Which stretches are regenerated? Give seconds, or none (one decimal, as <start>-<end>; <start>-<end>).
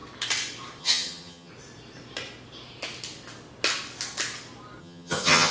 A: 0.8-1.5; 4.8-5.5